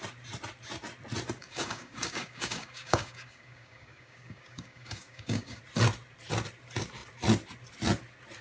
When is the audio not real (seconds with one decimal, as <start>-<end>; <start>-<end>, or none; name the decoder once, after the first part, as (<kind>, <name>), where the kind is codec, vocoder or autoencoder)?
1.4-5.6 (codec, DAC)